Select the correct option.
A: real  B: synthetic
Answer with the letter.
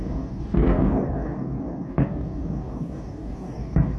B